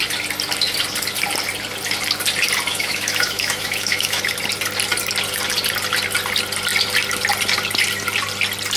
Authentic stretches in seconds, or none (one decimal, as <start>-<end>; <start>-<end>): 0.0-2.7; 4.2-8.8